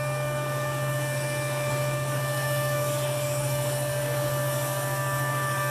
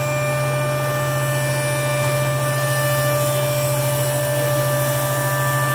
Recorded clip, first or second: second